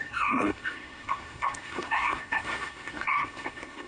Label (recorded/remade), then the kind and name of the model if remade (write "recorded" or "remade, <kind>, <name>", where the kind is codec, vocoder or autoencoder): remade, codec, SNAC